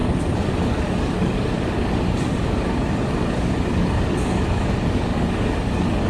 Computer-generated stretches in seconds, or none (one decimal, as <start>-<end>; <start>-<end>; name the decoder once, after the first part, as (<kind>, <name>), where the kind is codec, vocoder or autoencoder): 0.6-6.1 (codec, DAC)